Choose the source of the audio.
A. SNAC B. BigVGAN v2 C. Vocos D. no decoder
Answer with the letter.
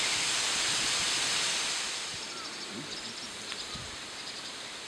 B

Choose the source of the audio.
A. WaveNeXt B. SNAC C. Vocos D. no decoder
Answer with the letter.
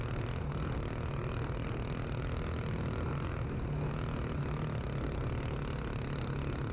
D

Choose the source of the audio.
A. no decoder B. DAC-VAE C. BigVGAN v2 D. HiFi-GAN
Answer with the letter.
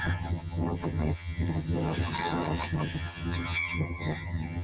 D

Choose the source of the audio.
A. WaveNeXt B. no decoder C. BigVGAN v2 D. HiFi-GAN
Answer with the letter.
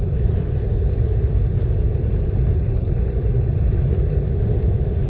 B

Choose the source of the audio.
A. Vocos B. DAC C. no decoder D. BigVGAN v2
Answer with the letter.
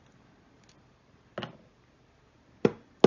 C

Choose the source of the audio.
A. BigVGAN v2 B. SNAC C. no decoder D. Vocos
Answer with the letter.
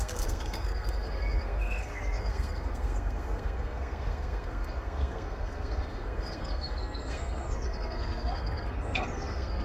B